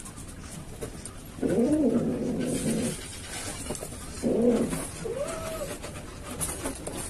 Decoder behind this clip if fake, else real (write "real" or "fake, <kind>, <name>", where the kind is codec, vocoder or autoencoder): real